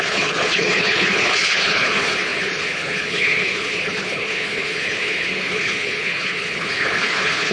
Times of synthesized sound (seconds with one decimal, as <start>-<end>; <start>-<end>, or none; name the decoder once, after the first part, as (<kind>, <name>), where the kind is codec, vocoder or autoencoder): 0.0-7.5 (codec, HILCodec)